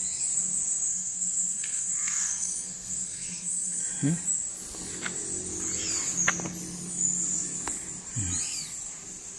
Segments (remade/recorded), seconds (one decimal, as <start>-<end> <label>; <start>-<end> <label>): 0.0-0.9 recorded; 0.9-3.8 remade; 3.8-9.4 recorded